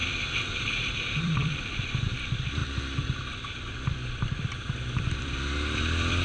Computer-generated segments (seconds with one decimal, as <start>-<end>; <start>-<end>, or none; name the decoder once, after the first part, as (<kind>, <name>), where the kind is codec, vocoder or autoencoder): 0.6-6.2 (vocoder, BigVGAN v2)